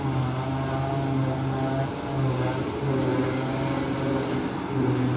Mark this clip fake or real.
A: real